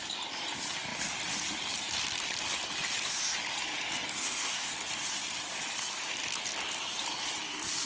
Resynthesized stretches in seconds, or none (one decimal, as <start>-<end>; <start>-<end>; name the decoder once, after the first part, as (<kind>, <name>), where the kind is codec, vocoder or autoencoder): 4.2-4.7 (codec, ZipCodec)